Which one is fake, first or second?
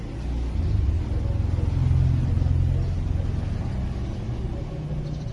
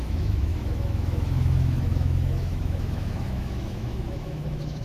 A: second